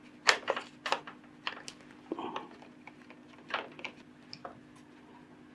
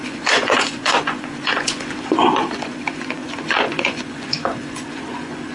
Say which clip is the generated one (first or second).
second